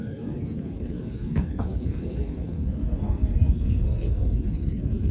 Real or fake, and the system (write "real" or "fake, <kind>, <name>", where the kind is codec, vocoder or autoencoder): fake, codec, SNAC